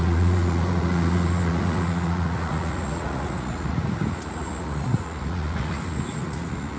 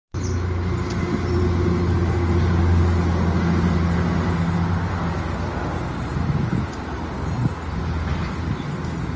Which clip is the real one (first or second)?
second